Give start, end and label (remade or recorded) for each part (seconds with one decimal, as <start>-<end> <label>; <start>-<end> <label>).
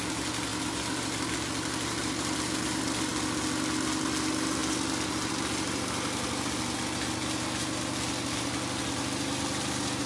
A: 0.0-10.1 recorded